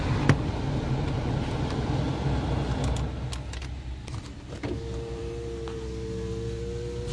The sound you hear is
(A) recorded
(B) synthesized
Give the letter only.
A